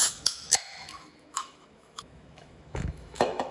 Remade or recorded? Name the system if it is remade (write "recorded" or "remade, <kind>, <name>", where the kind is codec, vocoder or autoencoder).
remade, autoencoder, DAC-VAE